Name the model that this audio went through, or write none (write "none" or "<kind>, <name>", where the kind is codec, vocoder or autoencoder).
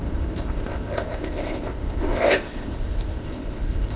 codec, ZipCodec